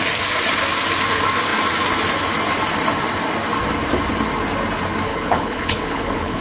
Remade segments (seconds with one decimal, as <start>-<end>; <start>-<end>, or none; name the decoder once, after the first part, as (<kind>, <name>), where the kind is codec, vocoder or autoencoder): 5.1-6.4 (codec, HILCodec)